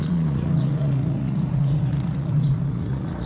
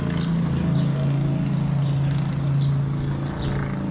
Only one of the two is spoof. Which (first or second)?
first